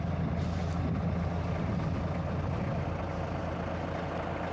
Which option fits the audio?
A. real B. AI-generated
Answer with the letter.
A